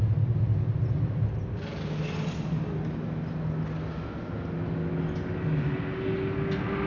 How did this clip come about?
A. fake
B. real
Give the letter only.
B